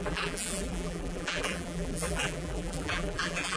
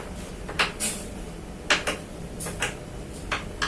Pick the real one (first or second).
second